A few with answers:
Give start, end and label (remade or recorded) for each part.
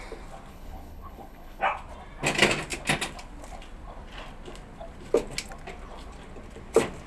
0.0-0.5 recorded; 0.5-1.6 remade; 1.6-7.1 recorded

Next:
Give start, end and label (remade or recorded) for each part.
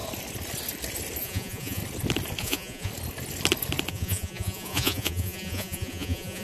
0.0-1.2 recorded; 1.2-1.8 remade; 1.8-2.4 recorded; 2.4-2.9 remade; 2.9-3.9 recorded; 3.9-6.4 remade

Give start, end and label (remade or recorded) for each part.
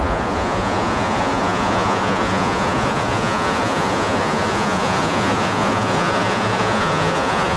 0.0-7.6 remade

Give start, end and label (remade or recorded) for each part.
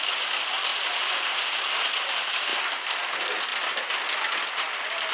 0.0-0.7 recorded; 0.7-1.8 remade; 1.8-5.1 recorded